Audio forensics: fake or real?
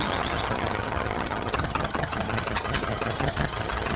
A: fake